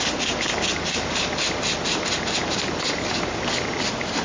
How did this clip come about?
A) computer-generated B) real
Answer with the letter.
B